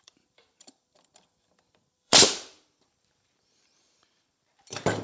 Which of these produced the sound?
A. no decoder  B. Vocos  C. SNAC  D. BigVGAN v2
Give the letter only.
D